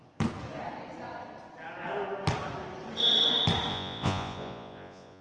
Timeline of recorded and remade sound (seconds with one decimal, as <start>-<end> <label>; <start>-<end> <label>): 0.0-3.7 recorded; 3.7-5.2 remade